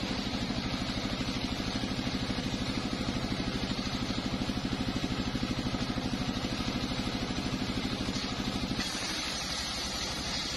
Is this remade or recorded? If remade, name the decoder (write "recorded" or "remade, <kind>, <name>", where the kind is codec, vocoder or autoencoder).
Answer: remade, vocoder, BigVGAN v2